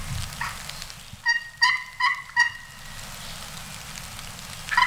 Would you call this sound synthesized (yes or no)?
no